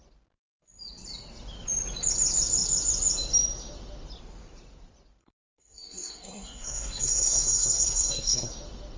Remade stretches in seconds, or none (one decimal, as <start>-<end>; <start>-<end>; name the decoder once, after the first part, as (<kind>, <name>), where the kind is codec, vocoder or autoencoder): 5.2-8.5 (codec, SNAC)